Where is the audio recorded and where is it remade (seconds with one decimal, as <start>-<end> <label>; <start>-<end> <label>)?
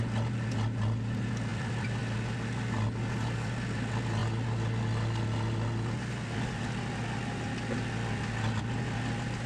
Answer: 0.0-1.5 recorded; 1.5-2.0 remade; 2.0-9.5 recorded